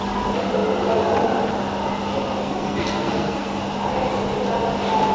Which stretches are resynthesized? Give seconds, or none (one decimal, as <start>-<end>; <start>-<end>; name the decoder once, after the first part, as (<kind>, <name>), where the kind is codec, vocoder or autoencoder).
2.4-3.6 (codec, SNAC)

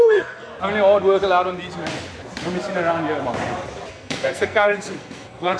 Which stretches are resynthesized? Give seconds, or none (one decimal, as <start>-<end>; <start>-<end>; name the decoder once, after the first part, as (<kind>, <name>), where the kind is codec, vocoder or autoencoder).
0.0-0.5 (codec, SNAC); 3.9-5.6

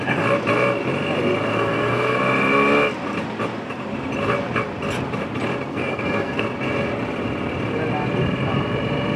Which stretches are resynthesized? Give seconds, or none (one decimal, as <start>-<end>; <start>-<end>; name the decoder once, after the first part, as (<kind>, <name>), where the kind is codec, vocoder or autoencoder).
1.5-2.2 (codec, SNAC); 5.7-6.4

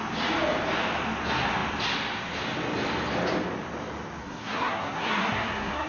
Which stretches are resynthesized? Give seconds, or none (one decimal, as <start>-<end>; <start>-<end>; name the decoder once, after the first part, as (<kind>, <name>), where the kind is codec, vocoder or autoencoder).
4.2-5.9 (codec, SNAC)